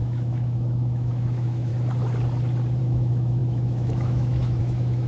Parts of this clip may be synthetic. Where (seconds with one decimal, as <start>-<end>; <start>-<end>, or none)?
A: 0.0-1.7; 2.8-5.1